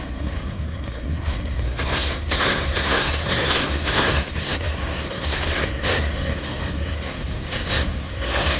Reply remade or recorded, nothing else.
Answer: remade